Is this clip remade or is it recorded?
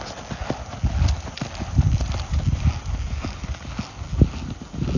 recorded